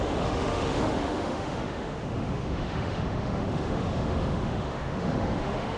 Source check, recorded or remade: remade